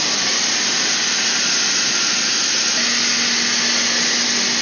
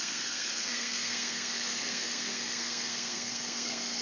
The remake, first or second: second